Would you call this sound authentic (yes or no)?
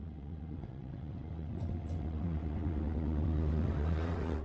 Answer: no